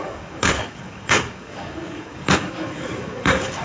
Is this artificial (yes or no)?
yes